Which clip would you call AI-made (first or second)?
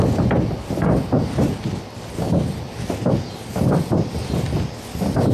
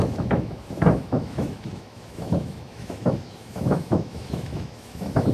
second